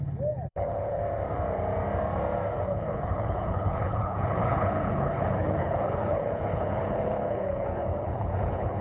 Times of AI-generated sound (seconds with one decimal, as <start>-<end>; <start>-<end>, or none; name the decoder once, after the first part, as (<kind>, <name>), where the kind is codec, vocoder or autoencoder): 0.0-1.0 (codec, HILCodec); 2.6-8.8